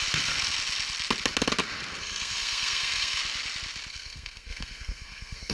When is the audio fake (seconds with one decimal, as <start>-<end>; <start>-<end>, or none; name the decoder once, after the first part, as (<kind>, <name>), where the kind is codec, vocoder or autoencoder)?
2.0-3.2 (codec, SNAC); 3.9-5.5